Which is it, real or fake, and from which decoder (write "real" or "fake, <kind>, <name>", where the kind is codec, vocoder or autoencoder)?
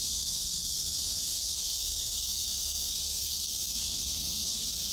fake, codec, SNAC